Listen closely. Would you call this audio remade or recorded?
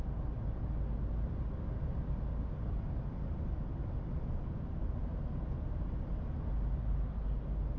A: recorded